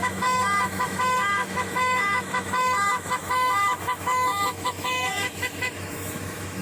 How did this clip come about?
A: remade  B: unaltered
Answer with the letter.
A